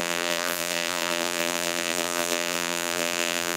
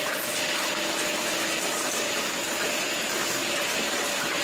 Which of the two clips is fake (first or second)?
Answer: first